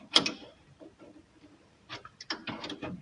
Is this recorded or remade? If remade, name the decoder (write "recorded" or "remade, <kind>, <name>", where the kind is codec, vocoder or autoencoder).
remade, vocoder, BigVGAN v2